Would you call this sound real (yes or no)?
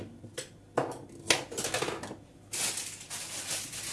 yes